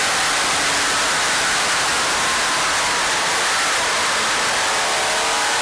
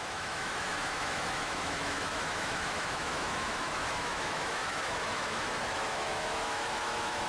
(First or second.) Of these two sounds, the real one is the first